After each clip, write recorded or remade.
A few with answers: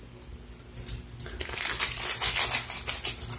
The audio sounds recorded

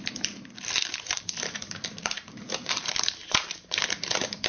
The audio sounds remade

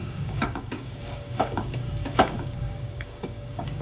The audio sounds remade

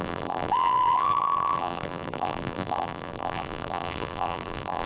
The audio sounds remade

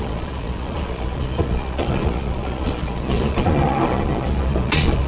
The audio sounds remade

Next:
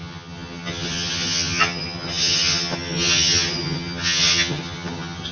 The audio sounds remade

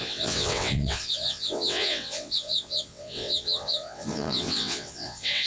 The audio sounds remade